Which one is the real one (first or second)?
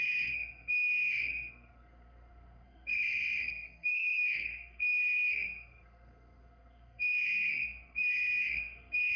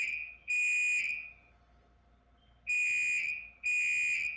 second